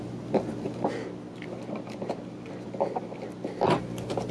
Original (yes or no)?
yes